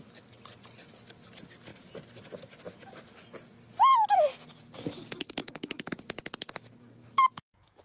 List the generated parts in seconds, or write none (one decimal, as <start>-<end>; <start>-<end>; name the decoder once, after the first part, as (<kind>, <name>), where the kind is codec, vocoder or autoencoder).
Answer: 5.4-5.9 (autoencoder, DAC-VAE); 7.0-7.8